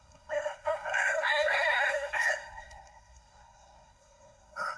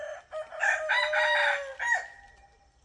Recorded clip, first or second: second